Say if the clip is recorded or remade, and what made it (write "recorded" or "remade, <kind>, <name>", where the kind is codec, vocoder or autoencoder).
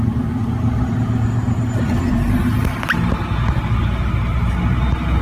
recorded